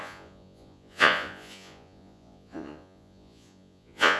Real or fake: fake